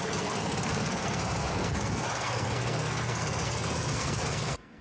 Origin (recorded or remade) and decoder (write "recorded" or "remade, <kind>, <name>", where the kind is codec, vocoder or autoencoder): remade, codec, SNAC